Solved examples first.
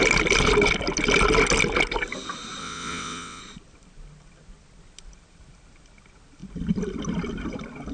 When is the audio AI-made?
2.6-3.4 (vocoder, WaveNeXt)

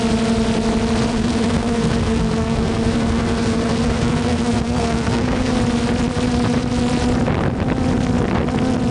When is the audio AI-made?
1.1-5.5 (codec, SNAC)

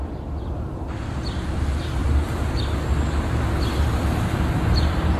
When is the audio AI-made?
2.0-2.6 (vocoder, BigVGAN v2)

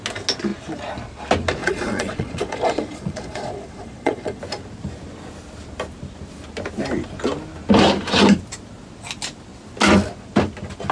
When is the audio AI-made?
1.6-4.4 (vocoder, Vocos)